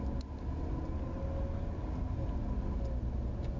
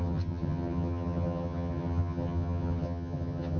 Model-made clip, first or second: second